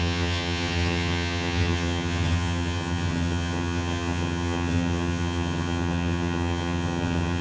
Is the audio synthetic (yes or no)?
yes